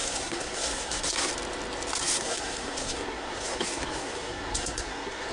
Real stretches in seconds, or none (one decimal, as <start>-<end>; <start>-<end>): 1.3-2.0